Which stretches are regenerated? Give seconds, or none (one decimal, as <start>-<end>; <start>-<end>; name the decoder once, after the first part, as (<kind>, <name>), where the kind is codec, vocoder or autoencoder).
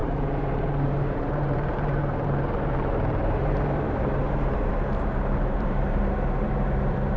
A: 0.0-7.2 (vocoder, BigVGAN v2)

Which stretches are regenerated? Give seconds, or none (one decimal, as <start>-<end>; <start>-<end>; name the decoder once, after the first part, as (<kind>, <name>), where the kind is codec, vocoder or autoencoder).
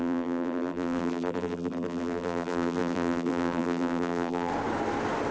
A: 0.0-4.5 (vocoder, BigVGAN v2)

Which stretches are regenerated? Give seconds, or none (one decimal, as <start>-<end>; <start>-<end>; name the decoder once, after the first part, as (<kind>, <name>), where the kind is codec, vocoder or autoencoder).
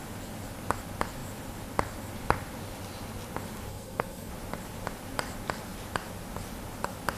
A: 3.7-4.3 (codec, SNAC)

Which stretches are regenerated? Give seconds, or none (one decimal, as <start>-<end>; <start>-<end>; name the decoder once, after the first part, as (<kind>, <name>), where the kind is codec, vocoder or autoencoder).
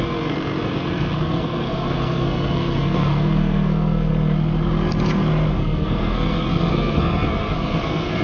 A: 0.0-4.1 (codec, SNAC); 5.5-8.2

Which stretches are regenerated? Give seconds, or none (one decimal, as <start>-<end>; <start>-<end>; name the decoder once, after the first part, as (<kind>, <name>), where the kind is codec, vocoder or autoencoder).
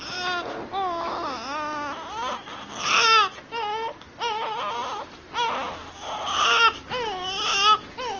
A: none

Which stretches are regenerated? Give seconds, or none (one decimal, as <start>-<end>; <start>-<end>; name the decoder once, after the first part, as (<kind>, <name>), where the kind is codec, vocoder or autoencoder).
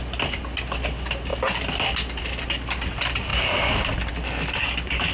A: none